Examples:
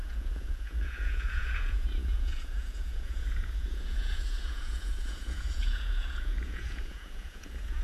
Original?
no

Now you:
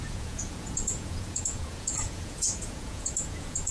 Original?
no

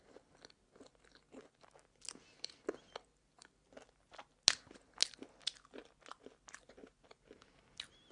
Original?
yes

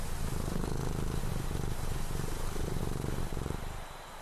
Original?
yes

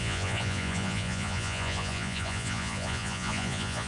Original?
no